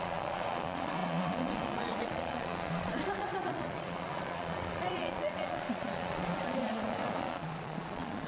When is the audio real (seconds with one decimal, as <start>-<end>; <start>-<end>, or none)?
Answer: none